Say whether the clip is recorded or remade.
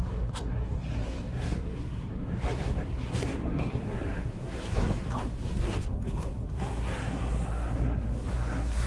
remade